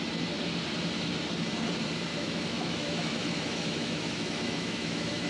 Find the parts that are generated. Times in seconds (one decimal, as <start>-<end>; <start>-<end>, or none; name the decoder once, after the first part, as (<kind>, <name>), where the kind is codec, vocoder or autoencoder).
2.1-5.3 (autoencoder, DAC-VAE)